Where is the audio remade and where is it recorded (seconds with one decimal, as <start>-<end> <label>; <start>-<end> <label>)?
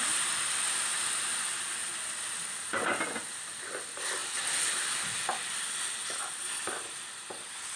0.0-7.8 recorded